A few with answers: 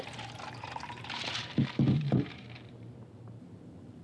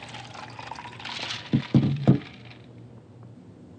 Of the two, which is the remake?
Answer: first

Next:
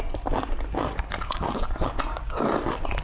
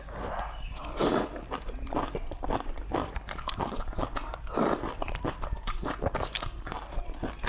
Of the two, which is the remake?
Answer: second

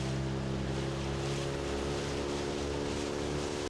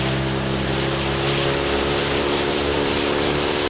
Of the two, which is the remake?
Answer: second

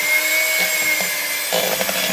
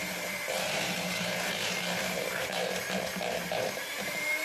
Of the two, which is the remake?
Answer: second